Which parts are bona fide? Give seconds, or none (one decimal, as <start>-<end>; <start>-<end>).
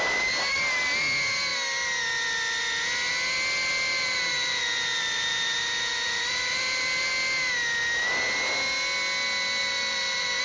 0.0-3.7; 7.1-9.6